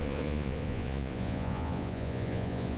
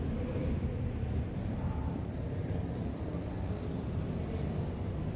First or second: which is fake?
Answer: first